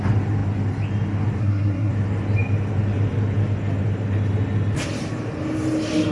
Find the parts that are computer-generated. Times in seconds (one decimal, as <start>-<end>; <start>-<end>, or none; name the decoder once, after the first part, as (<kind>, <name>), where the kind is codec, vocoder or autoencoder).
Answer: 1.4-1.9 (codec, SNAC)